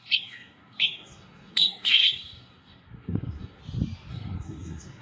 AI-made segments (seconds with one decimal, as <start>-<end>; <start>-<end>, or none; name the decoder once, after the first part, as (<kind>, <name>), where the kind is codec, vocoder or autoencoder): 0.0-3.6 (codec, SNAC); 4.1-5.0